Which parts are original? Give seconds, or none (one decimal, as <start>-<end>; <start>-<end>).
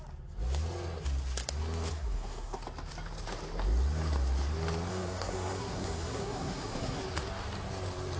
0.0-1.9; 2.6-4.9; 7.0-8.2